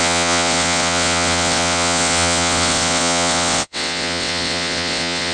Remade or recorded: remade